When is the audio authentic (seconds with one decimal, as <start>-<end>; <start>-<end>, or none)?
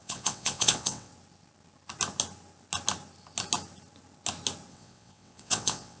1.1-4.7